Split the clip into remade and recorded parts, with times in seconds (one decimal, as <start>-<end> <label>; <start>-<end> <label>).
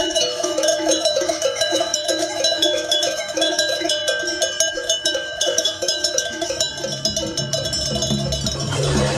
0.0-4.0 remade; 4.0-4.7 recorded; 4.7-6.7 remade; 6.7-9.2 recorded